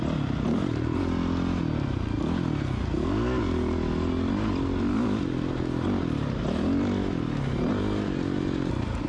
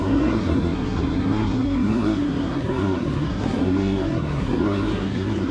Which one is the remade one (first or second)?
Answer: second